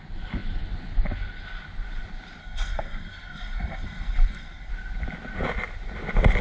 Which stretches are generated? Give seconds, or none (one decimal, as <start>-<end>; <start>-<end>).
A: 2.4-4.7